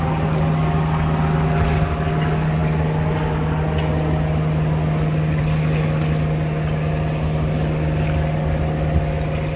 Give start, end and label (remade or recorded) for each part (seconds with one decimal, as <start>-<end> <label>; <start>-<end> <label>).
0.0-9.6 recorded